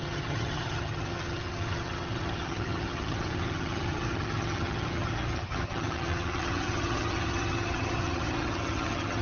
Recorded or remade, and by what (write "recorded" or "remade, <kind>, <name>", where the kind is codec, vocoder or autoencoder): remade, vocoder, HiFi-GAN